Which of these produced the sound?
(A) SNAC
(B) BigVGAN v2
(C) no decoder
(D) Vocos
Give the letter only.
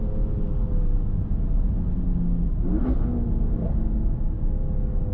C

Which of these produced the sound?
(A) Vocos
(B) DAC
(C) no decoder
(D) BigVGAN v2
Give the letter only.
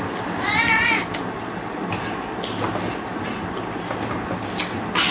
C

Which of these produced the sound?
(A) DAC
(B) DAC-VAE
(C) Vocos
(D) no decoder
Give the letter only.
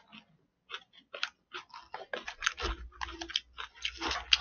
D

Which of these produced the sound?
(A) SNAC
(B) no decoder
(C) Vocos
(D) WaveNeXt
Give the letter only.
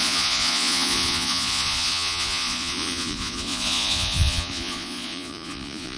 C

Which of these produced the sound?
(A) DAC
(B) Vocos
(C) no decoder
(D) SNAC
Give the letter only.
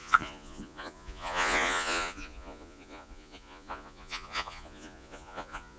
B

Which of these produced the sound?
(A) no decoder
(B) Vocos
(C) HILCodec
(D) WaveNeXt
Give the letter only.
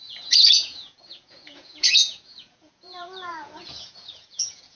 B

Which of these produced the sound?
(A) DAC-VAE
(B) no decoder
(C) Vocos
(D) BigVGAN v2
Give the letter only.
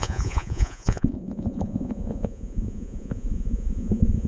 C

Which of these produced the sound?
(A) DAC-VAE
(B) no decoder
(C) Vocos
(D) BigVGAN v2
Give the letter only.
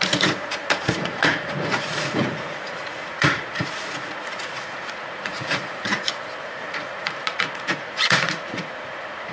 C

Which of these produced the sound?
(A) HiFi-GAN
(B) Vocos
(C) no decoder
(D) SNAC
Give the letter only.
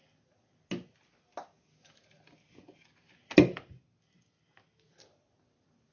C